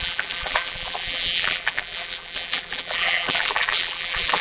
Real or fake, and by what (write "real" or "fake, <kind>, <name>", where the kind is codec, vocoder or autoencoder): fake, vocoder, BigVGAN v2